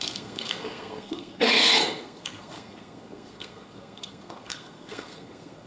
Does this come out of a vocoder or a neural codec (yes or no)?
yes